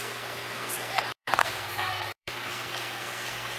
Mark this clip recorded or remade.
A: remade